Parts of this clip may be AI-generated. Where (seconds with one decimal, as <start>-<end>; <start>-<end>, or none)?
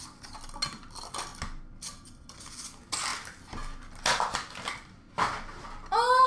none